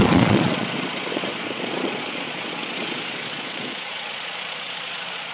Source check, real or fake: fake